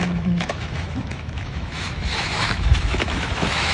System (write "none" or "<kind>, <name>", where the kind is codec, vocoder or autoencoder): autoencoder, DAC-VAE